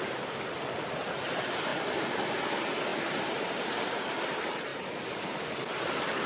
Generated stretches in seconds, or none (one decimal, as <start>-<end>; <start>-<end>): 2.9-3.5

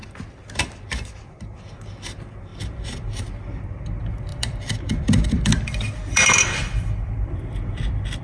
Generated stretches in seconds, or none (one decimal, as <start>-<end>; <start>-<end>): 4.3-8.2

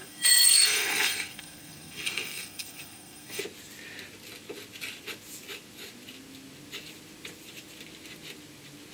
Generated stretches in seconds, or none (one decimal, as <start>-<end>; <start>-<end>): 0.0-3.4